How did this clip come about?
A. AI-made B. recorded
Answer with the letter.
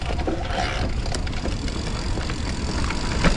A